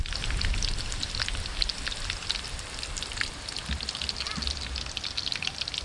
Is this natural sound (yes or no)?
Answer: yes